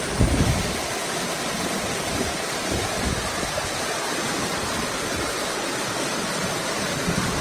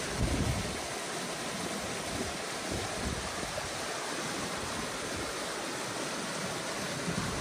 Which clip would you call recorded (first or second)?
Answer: second